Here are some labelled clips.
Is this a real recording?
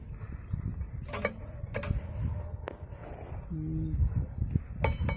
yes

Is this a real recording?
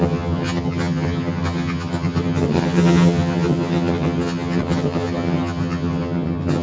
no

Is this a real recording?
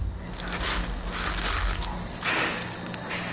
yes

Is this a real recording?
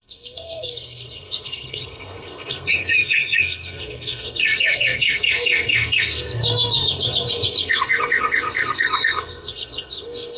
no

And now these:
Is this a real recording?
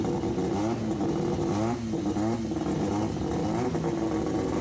yes